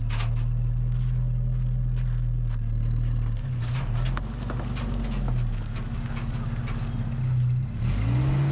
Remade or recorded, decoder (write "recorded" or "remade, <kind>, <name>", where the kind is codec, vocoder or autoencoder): recorded